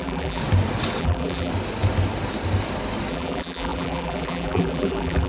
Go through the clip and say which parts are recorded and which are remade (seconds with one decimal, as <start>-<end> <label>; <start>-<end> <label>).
0.0-0.4 remade; 0.4-1.0 recorded; 1.0-1.5 remade; 1.5-3.1 recorded; 3.1-5.3 remade